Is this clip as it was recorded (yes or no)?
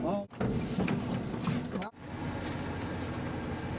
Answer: yes